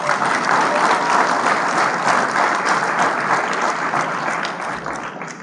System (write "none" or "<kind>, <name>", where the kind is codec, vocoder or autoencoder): none